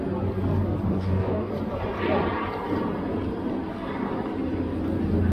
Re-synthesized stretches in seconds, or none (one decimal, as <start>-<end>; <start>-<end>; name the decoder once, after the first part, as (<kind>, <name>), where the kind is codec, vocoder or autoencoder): 0.9-1.5 (codec, DAC)